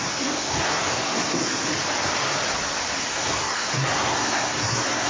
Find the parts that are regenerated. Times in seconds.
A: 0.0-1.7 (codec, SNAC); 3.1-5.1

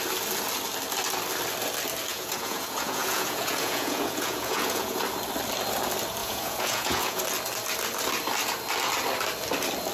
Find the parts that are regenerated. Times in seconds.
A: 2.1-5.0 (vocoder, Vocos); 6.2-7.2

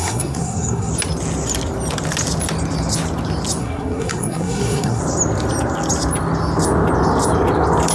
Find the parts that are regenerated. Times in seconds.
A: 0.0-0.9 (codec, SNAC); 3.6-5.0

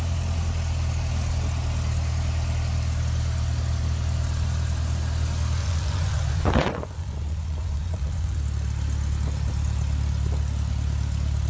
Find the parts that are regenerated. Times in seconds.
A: 5.6-8.4 (vocoder, Vocos)